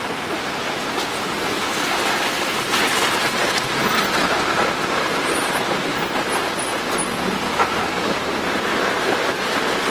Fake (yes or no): no